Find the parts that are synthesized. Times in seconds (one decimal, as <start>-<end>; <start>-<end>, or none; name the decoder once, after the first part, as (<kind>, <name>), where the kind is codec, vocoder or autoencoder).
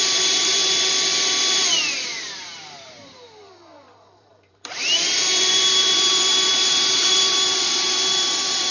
0.0-0.6 (vocoder, BigVGAN v2); 1.5-8.7